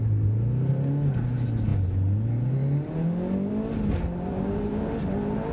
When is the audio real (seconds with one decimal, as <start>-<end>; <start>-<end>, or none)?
0.0-4.3; 4.9-5.5